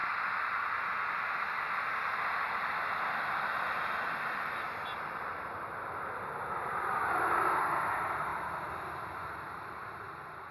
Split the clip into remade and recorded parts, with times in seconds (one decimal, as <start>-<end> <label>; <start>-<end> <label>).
0.0-10.5 recorded